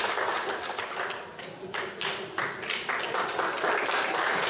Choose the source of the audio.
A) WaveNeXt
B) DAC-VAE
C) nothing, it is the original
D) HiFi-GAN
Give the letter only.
C